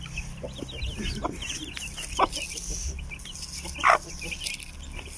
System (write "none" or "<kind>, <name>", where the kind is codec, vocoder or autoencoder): none